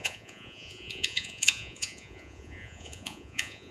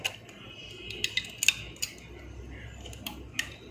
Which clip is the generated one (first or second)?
first